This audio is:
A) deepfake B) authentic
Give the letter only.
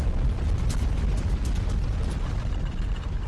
B